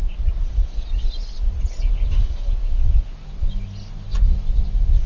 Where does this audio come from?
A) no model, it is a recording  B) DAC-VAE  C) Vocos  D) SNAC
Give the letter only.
A